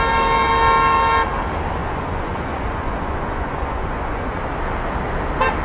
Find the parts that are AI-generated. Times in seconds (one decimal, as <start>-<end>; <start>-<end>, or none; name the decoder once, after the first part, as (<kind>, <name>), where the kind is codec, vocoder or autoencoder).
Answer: 1.8-4.4 (vocoder, Vocos)